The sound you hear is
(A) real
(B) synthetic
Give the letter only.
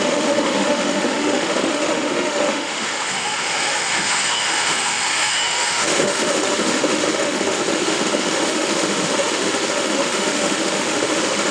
B